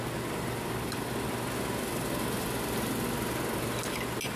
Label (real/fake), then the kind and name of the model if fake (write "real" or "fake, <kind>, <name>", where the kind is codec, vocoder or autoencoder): real